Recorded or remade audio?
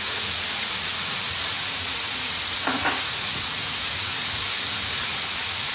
remade